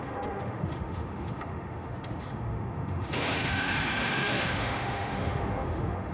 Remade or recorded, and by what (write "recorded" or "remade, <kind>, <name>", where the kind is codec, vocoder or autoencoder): remade, autoencoder, DAC-VAE